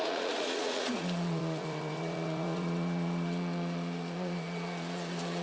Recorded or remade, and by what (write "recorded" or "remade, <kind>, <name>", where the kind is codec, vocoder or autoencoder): remade, vocoder, Vocos